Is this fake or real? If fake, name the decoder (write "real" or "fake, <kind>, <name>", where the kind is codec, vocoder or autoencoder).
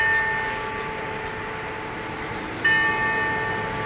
real